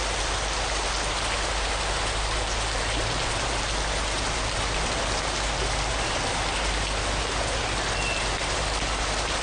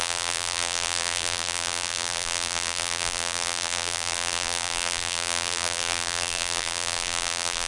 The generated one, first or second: second